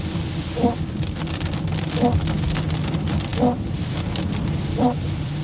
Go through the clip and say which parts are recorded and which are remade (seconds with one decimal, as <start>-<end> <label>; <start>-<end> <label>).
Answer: 0.0-5.4 recorded